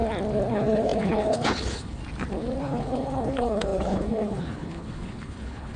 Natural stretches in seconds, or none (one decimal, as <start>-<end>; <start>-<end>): 0.0-0.5; 2.0-2.6